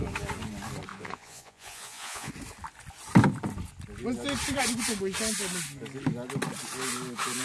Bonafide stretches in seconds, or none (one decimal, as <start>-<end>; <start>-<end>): 0.0-0.9; 2.3-7.4